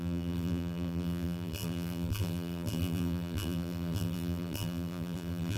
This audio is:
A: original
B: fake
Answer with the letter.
B